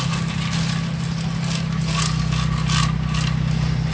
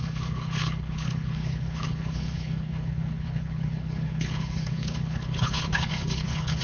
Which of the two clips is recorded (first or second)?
first